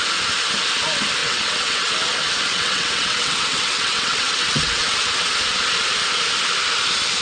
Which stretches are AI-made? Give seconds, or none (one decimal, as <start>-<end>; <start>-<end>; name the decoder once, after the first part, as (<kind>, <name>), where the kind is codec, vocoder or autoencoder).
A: 1.2-1.9 (vocoder, WaveNeXt); 2.5-5.3